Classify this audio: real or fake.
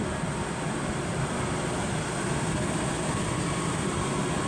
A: real